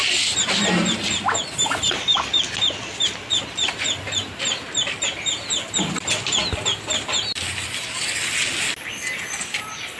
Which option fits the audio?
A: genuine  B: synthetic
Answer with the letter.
A